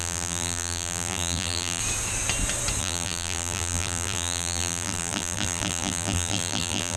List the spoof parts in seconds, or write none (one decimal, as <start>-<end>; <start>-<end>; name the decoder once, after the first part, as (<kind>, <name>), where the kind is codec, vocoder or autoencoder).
0.0-1.8 (vocoder, BigVGAN v2); 2.8-7.0